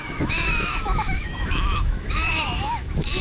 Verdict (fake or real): fake